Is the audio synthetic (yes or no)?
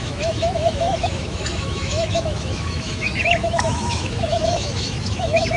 yes